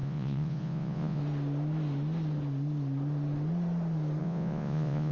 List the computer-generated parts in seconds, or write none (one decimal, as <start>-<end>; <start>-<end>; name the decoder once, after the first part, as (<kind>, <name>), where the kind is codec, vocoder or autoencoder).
0.0-1.2 (vocoder, Vocos); 4.2-5.1